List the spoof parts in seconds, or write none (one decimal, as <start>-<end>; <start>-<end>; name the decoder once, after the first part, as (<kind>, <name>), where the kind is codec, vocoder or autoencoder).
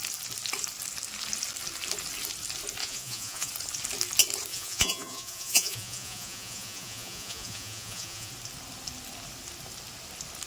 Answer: 2.8-3.5 (vocoder, Vocos); 4.5-8.3